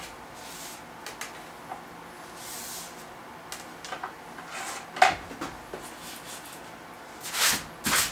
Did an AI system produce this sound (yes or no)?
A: no